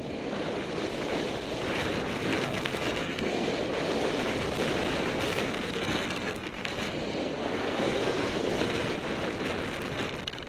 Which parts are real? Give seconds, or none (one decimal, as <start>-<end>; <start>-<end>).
0.0-2.3; 3.5-5.3; 6.7-7.2; 8.9-10.5